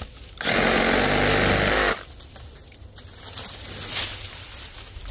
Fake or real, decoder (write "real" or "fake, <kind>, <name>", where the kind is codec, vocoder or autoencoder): real